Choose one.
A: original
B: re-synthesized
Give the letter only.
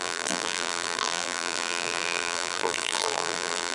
B